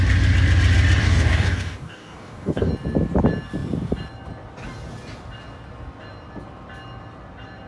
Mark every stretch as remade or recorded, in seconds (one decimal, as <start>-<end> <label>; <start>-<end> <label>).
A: 0.0-1.0 recorded; 1.0-2.7 remade; 2.7-7.7 recorded